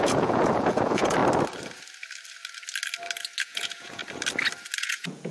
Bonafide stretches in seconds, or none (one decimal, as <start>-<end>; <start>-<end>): 1.2-3.4; 4.0-4.8